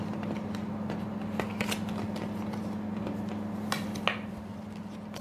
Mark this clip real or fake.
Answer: real